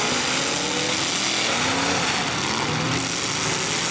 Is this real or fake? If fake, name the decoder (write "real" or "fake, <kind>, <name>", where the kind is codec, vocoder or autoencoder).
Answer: real